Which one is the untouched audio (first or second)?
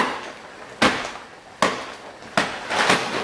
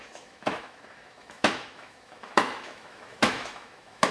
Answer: first